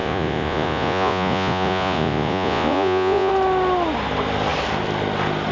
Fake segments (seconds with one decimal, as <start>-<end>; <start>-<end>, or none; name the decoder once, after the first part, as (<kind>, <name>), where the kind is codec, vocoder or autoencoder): 0.0-3.3 (vocoder, Vocos)